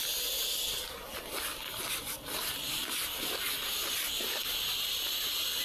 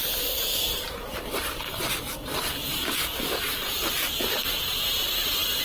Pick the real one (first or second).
first